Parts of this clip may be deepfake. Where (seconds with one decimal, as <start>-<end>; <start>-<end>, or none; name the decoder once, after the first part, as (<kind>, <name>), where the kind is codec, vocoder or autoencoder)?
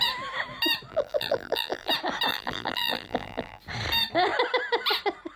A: 0.9-1.9 (vocoder, BigVGAN v2); 2.3-3.6